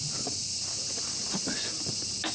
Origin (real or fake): real